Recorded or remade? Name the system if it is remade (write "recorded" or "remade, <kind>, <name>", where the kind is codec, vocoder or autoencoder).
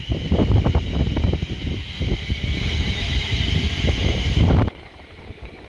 recorded